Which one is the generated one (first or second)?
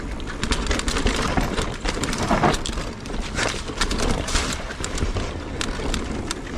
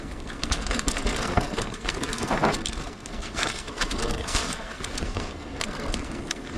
second